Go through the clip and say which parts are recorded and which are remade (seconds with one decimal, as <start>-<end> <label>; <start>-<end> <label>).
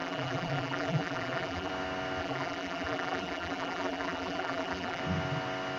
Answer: 0.0-1.7 remade; 1.7-2.2 recorded; 2.2-5.0 remade; 5.0-5.8 recorded